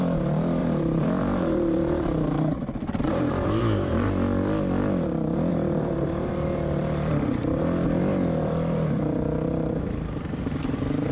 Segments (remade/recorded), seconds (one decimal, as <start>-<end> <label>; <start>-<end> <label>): 0.0-0.6 recorded; 0.6-4.1 remade; 4.1-5.5 recorded; 5.5-6.3 remade; 6.3-11.1 recorded